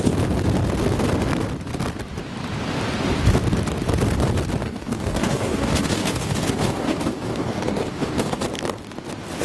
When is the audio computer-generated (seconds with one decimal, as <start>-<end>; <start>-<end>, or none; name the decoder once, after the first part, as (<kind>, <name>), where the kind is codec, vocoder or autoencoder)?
4.6-8.4 (codec, DAC)